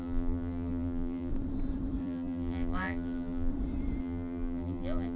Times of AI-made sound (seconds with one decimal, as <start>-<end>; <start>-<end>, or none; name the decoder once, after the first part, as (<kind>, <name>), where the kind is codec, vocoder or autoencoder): 0.0-1.3 (vocoder, BigVGAN v2); 2.0-3.5; 4.0-5.2